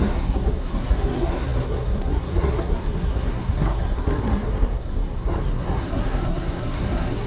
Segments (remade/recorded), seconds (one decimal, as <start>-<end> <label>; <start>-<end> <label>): 0.0-7.3 remade

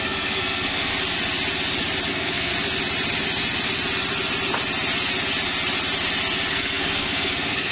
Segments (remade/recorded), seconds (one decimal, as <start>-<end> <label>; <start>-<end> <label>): 0.0-0.9 remade; 0.9-2.1 recorded; 2.1-2.5 remade; 2.5-6.5 recorded; 6.5-7.7 remade

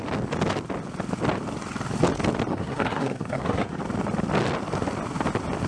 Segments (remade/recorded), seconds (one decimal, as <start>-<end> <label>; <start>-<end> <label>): 0.0-2.5 recorded; 2.5-3.8 remade; 3.8-5.7 recorded

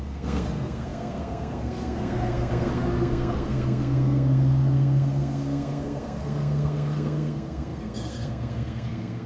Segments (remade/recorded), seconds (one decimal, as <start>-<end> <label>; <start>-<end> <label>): 0.0-9.3 remade

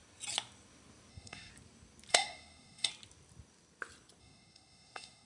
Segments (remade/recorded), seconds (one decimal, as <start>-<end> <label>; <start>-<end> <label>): 0.0-1.1 recorded; 1.1-1.5 remade; 1.5-2.1 recorded; 2.1-2.9 remade; 2.9-4.2 recorded; 4.2-5.3 remade

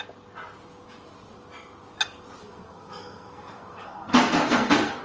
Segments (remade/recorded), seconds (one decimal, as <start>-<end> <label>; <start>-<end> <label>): 0.0-2.4 recorded; 2.4-5.0 remade

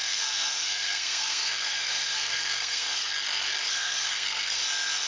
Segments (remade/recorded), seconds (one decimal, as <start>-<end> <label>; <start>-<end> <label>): 0.0-3.1 remade; 3.1-3.6 recorded; 3.6-4.6 remade; 4.6-5.1 recorded